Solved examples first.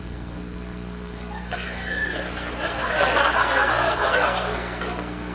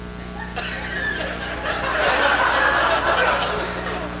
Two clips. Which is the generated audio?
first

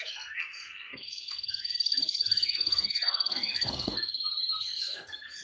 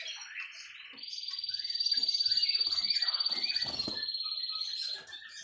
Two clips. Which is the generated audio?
first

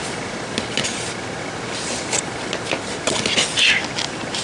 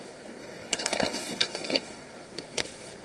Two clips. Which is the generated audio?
second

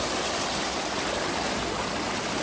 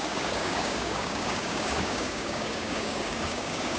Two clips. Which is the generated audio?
second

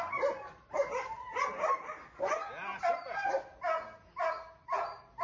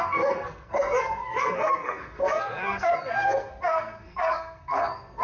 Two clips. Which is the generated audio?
second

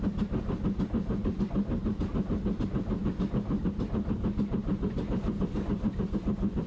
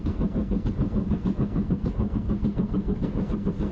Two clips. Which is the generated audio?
second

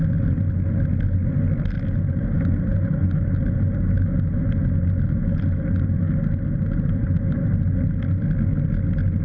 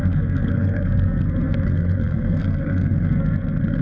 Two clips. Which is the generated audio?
second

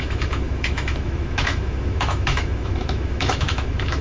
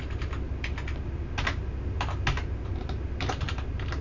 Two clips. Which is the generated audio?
first